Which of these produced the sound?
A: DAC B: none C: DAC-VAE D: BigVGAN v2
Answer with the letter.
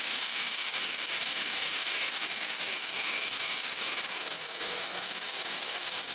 A